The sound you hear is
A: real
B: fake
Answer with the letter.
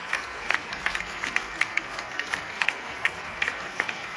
B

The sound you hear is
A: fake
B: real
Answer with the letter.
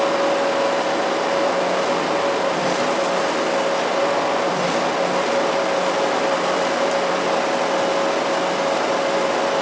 B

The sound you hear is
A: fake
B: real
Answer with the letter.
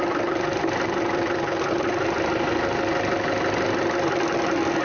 B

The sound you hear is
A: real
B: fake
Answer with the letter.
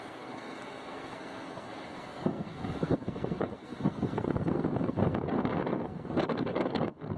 B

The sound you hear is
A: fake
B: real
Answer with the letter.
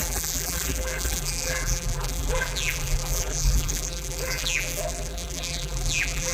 A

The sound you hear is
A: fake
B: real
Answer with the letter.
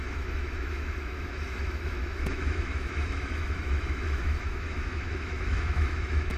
A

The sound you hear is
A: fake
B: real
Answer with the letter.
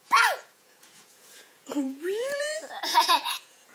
A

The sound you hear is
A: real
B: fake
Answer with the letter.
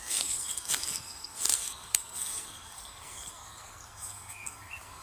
B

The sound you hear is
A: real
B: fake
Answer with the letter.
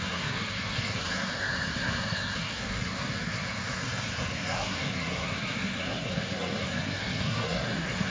B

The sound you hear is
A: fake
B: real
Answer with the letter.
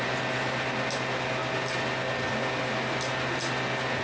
B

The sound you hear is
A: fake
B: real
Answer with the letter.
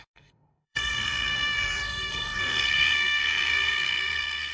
A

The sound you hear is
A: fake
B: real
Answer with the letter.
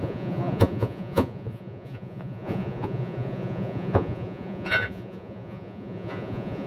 A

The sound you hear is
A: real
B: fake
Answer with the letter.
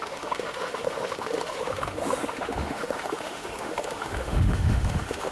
B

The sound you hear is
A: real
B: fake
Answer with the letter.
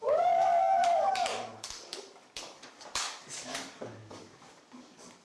B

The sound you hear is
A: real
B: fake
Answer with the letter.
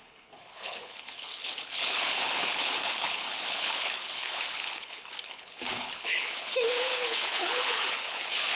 B